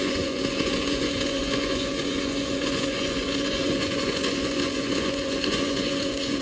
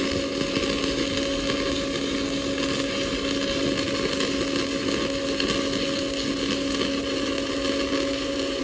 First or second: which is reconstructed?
first